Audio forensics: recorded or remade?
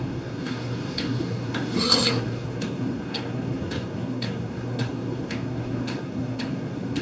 remade